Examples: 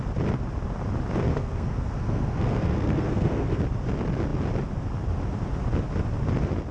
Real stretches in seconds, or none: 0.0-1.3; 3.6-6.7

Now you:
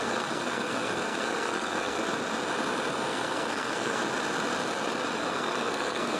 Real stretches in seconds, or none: 2.0-2.9; 4.0-5.3

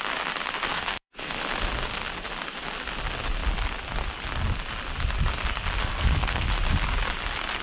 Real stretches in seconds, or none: 0.0-0.7; 1.4-5.8; 6.5-7.6